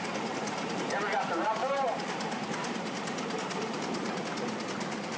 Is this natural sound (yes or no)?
no